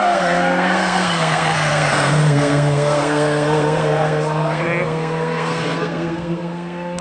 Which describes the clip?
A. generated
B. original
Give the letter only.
A